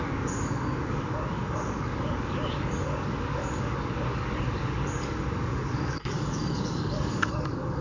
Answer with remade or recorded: remade